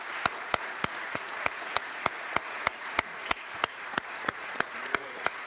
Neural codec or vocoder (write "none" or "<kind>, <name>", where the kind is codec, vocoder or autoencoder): vocoder, Vocos